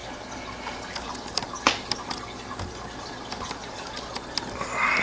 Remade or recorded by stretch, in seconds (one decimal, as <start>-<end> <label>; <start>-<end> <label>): 0.0-5.0 recorded